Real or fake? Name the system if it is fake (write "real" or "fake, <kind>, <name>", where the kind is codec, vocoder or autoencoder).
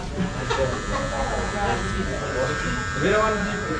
real